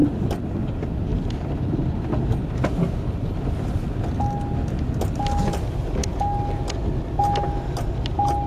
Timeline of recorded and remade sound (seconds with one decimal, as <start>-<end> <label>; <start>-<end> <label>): 0.0-8.5 recorded